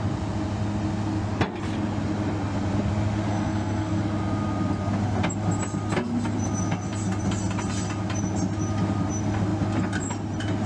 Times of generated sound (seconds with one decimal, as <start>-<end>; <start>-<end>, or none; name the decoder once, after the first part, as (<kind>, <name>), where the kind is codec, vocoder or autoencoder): 3.3-4.0 (codec, SNAC)